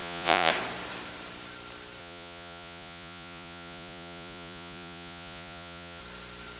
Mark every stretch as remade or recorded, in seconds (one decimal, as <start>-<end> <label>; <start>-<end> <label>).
0.0-0.5 remade; 0.5-2.0 recorded; 2.0-6.0 remade; 6.0-6.6 recorded